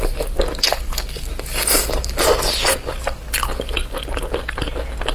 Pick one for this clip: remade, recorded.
recorded